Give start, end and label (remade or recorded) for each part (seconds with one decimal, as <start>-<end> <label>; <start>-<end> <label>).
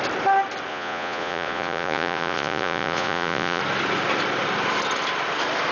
0.0-0.7 recorded; 0.7-3.6 remade; 3.6-5.7 recorded